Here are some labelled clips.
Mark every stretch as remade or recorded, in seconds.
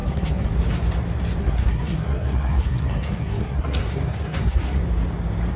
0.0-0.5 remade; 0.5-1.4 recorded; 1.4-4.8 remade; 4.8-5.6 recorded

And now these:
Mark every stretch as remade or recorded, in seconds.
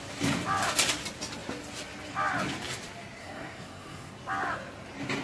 0.0-3.2 recorded; 3.2-4.1 remade; 4.1-5.2 recorded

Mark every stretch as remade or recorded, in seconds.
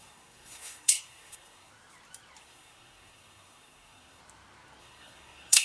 0.0-1.7 remade; 1.7-2.4 recorded; 2.4-4.2 remade; 4.2-4.8 recorded; 4.8-5.6 remade